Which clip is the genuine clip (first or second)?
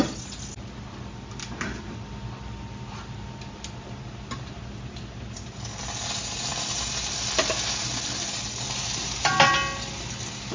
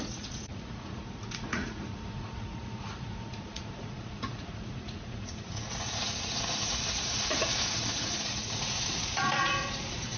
first